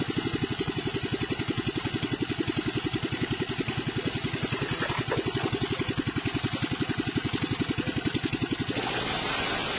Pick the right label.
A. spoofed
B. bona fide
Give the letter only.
A